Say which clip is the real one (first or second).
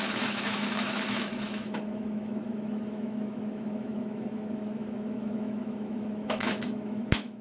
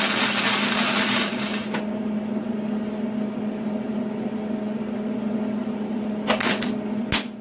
second